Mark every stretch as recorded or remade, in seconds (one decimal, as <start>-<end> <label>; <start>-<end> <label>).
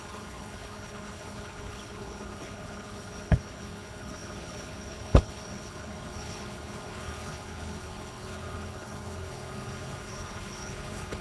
0.0-11.2 remade